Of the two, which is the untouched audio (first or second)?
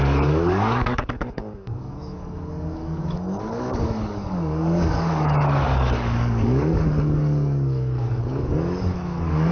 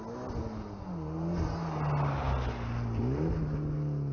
second